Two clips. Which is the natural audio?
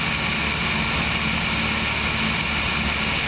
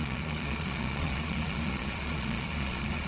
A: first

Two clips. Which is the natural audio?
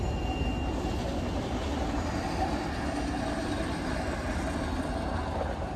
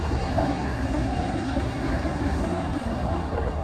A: first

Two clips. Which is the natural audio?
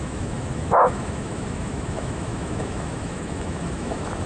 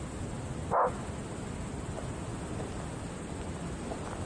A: second